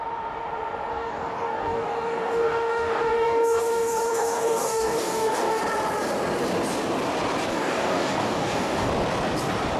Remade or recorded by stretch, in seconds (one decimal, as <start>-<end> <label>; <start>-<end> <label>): 0.0-0.9 recorded; 0.9-5.6 remade; 5.6-7.5 recorded; 7.5-8.9 remade; 8.9-9.8 recorded